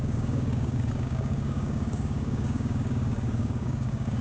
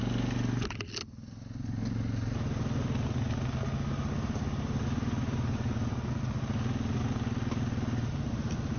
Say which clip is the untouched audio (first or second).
second